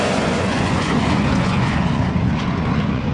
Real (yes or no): no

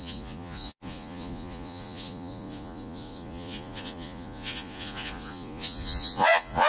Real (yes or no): no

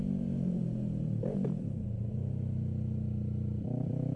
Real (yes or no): yes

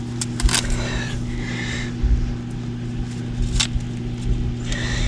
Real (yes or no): yes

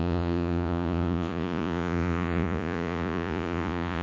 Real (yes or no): no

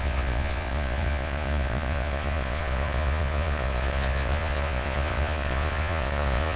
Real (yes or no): no